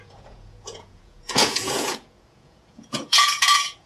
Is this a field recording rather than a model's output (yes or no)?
no